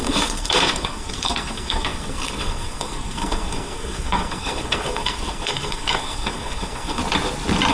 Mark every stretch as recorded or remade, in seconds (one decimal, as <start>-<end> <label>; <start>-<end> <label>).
0.0-7.0 remade; 7.0-7.7 recorded